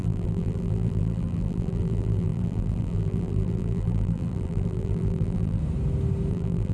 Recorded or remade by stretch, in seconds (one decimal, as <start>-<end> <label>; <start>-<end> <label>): 0.0-5.6 remade; 5.6-6.3 recorded; 6.3-6.7 remade